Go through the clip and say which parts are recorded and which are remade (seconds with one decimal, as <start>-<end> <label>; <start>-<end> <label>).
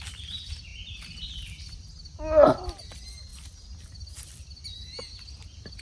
0.0-5.8 recorded